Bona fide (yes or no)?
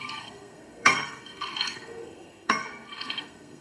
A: no